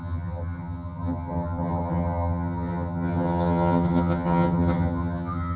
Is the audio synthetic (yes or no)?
yes